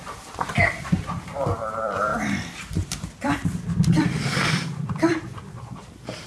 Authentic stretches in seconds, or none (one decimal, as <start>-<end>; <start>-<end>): none

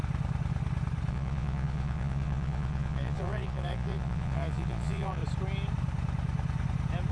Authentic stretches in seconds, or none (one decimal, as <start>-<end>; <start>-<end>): 0.0-1.1; 5.2-7.1

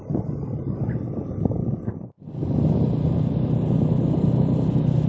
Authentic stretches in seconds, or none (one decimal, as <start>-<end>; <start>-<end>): 0.0-5.1

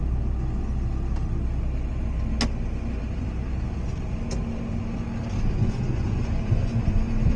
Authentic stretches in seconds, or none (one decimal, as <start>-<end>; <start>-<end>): 0.0-5.6

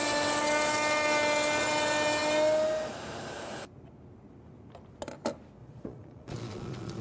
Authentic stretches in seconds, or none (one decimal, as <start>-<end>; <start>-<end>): 0.0-5.6

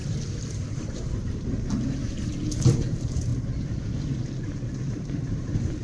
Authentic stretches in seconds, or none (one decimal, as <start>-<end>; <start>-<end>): 3.3-4.9

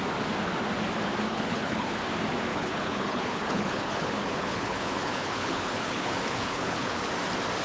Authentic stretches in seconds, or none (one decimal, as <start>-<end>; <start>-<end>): 0.0-1.3; 2.0-2.5; 7.1-7.6